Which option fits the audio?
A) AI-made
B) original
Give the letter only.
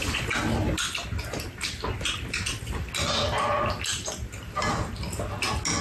B